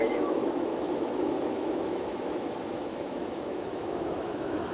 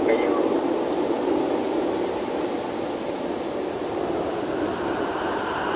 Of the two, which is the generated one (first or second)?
first